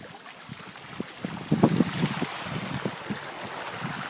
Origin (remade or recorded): recorded